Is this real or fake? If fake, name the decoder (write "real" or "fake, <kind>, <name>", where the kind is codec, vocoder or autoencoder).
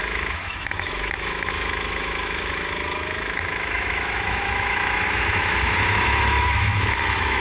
fake, autoencoder, DAC-VAE